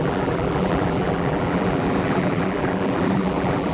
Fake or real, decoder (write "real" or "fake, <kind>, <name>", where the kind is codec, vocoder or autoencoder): fake, vocoder, BigVGAN v2